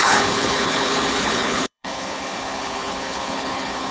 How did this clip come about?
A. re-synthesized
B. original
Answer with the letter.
A